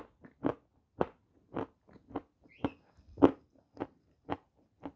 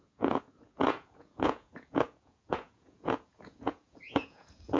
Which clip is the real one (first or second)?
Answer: first